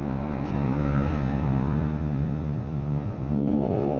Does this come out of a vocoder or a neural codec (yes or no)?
yes